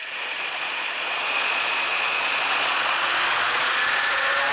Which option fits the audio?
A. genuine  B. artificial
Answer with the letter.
B